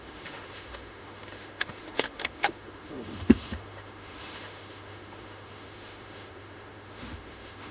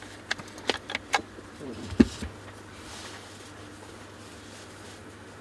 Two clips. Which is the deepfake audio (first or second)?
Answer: first